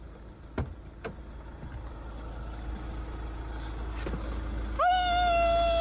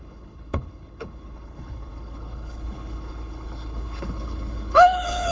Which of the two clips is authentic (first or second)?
first